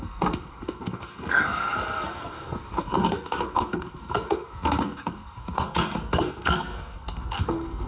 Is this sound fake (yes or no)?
yes